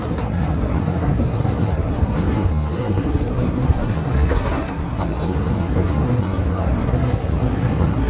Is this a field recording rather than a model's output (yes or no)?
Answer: no